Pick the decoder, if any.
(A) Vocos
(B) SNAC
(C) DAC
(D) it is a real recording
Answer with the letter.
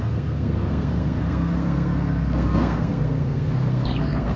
B